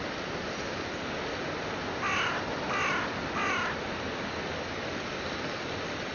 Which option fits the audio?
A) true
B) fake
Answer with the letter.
A